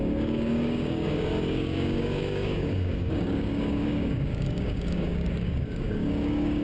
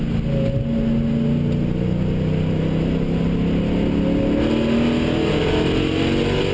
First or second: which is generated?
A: first